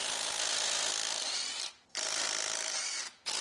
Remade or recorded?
recorded